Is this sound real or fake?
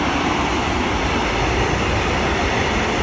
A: real